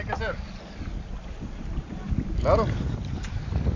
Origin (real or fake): real